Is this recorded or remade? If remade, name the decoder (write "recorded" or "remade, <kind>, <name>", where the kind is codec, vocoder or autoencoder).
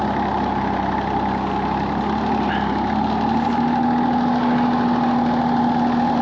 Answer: recorded